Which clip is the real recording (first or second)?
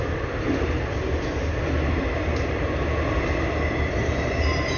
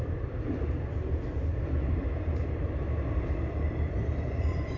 first